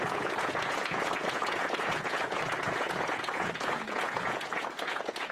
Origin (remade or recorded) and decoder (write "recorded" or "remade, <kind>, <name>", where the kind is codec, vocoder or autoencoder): remade, vocoder, Vocos